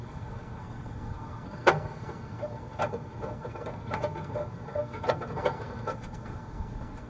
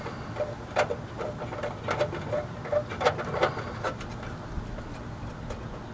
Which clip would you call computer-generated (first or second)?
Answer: first